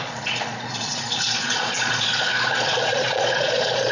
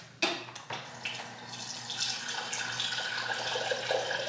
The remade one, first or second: first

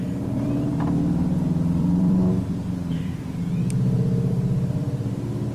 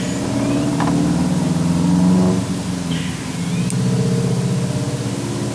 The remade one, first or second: first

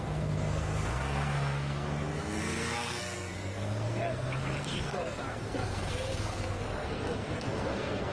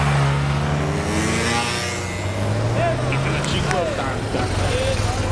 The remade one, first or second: first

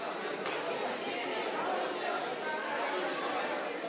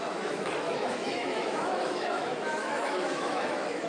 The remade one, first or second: second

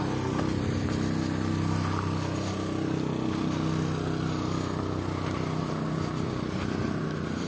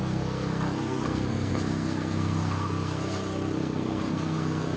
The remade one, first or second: second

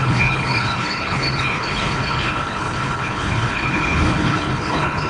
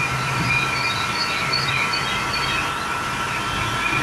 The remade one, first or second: first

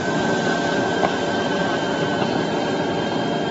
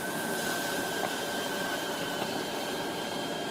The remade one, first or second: second